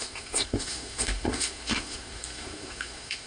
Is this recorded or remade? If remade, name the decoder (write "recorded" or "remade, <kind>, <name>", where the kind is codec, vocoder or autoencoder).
remade, codec, SNAC